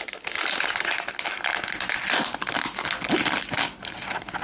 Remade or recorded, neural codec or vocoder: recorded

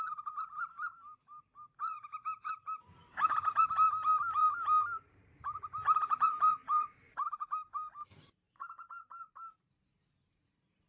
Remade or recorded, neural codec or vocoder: remade, vocoder, BigVGAN v2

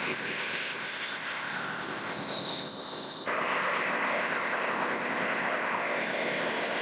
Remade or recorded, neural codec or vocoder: remade, codec, ZipCodec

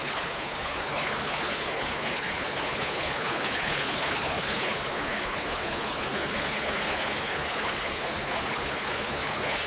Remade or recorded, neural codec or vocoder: remade, codec, HILCodec